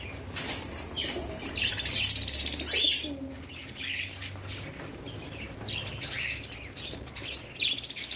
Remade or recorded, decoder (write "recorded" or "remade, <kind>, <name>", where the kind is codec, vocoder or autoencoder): recorded